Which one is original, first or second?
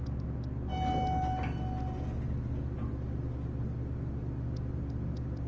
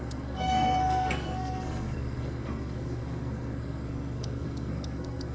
first